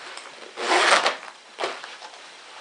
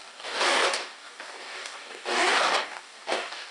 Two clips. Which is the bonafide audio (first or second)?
first